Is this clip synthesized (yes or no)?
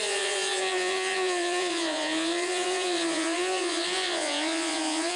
yes